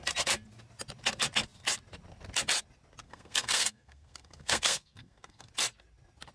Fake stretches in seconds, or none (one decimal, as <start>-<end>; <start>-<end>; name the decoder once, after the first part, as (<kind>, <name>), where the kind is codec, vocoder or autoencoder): 3.0-5.5 (codec, SNAC)